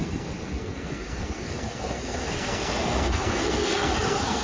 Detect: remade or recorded remade